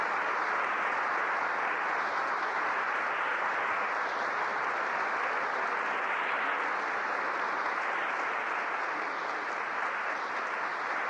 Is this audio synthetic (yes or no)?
no